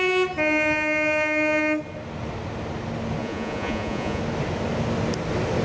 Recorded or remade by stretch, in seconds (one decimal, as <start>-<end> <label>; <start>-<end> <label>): 0.0-3.2 recorded; 3.2-4.2 remade; 4.2-5.6 recorded